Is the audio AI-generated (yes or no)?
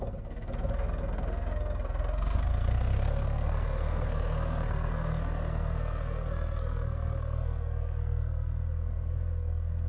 yes